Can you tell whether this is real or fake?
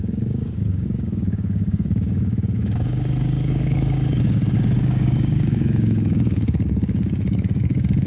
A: fake